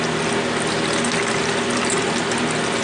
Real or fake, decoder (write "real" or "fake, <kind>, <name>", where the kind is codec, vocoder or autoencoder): real